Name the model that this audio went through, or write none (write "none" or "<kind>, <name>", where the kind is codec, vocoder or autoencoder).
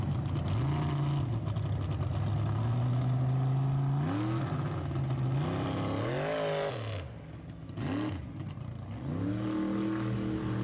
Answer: none